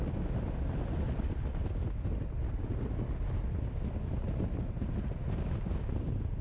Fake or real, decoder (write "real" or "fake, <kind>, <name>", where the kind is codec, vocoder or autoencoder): real